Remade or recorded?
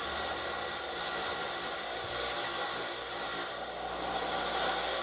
recorded